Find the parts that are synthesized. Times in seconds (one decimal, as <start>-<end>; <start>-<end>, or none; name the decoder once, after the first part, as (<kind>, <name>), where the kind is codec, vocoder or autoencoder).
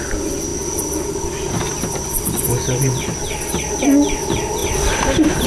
none